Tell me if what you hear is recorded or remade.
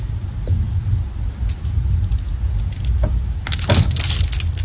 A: recorded